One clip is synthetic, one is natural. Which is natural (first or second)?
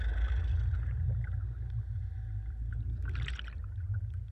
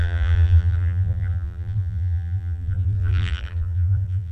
first